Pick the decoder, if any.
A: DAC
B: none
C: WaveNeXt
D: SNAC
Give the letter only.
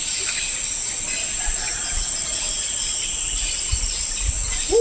B